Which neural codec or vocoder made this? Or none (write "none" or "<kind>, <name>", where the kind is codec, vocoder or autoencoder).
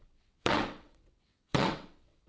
vocoder, WaveNeXt